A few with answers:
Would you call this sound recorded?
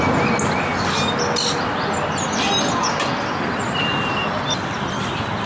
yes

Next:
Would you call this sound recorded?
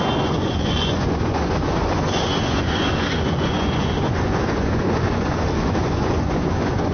no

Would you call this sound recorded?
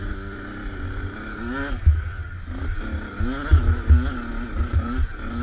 yes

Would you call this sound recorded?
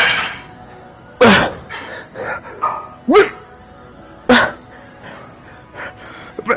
yes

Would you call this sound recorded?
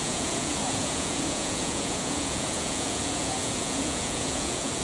no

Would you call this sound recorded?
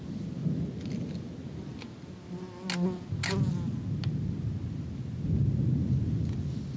yes